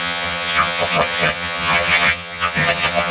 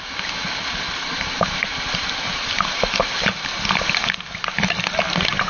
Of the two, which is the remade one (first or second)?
first